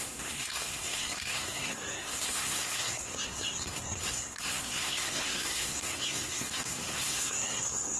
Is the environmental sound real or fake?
fake